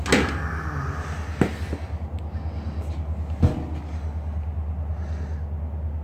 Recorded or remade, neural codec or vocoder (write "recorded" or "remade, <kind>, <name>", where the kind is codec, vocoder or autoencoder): recorded